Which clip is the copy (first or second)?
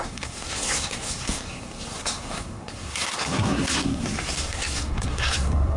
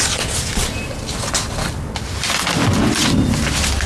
first